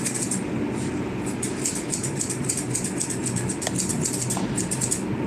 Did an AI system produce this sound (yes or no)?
no